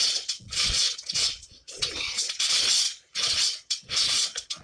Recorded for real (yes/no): no